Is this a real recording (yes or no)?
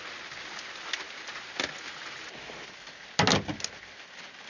yes